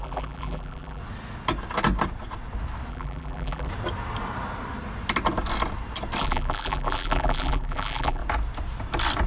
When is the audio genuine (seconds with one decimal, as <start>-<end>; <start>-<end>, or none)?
1.0-2.9; 3.7-6.2; 8.2-9.3